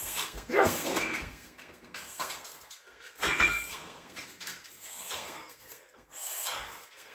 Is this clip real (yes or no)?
no